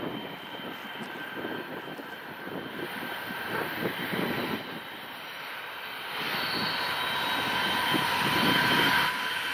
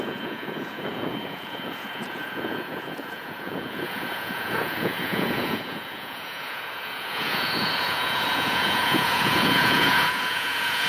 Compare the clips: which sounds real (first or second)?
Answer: first